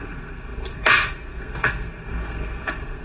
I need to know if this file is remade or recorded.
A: remade